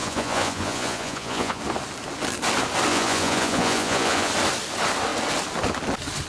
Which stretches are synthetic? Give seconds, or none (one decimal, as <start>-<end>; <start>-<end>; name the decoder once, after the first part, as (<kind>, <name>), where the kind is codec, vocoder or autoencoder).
0.0-1.6 (vocoder, Vocos); 2.9-4.3